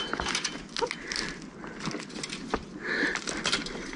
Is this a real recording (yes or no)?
yes